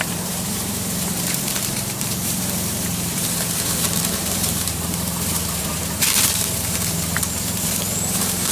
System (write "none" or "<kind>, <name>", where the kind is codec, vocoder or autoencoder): vocoder, BigVGAN v2